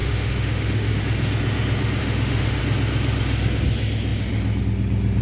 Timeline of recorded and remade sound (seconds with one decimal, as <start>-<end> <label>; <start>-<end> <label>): 0.0-1.0 remade; 1.0-2.0 recorded; 2.0-2.6 remade; 2.6-5.2 recorded